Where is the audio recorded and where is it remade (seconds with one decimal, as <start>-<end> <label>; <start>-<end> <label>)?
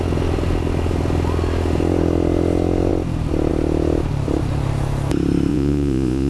0.0-5.5 recorded; 5.5-6.3 remade